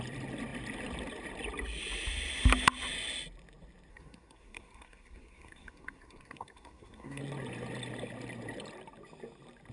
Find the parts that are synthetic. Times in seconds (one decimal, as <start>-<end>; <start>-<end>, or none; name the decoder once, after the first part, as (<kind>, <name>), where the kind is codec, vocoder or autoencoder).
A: 3.9-7.2 (codec, SNAC)